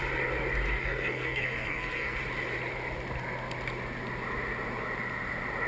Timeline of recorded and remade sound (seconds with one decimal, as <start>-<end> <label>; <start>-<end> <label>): 0.0-0.8 recorded; 0.8-2.2 remade; 2.2-5.7 recorded